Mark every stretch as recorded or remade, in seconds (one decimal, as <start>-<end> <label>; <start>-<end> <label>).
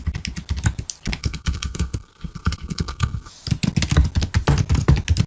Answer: 0.0-1.2 recorded; 1.2-3.3 remade; 3.3-5.3 recorded